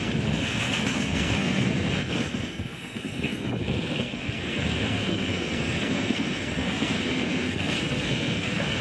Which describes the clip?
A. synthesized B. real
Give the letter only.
A